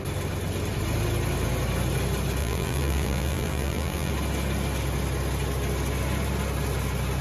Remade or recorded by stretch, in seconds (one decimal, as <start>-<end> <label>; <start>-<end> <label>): 0.0-2.4 recorded; 2.4-4.1 remade; 4.1-7.2 recorded